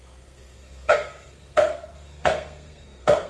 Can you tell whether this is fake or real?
fake